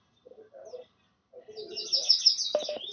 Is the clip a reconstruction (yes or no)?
no